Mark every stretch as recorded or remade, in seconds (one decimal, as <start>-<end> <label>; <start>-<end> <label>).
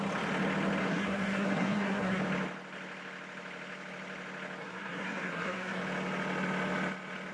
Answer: 0.0-0.8 recorded; 0.8-2.2 remade; 2.2-4.6 recorded; 4.6-5.8 remade; 5.8-7.3 recorded